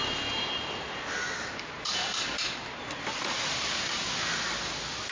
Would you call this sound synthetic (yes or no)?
no